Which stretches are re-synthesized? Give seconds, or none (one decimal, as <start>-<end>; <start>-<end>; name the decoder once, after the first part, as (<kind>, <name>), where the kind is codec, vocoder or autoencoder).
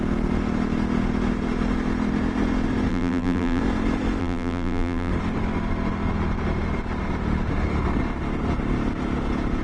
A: 2.9-3.6 (vocoder, BigVGAN v2); 4.2-5.1